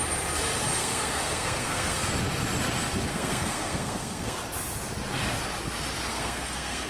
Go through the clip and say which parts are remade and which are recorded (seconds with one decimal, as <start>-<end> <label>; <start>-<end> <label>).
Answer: 0.0-0.8 recorded; 0.8-2.1 remade; 2.1-3.1 recorded; 3.1-4.4 remade; 4.4-6.1 recorded; 6.1-6.9 remade